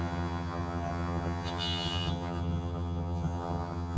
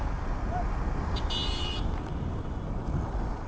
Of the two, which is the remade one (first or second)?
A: first